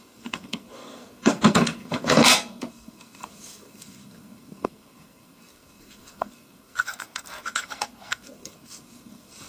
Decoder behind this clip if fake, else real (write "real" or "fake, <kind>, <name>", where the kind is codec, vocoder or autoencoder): fake, codec, SNAC